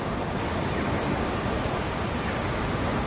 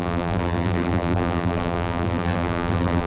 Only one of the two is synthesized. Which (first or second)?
second